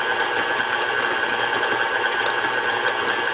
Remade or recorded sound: recorded